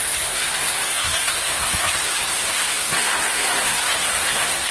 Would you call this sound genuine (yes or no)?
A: no